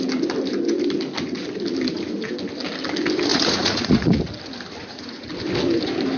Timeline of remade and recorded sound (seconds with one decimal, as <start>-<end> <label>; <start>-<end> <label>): 0.0-3.3 recorded; 3.3-4.2 remade; 4.2-4.8 recorded; 4.8-5.3 remade; 5.3-6.2 recorded